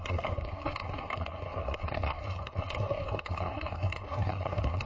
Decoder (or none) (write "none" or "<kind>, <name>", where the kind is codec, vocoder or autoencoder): codec, SNAC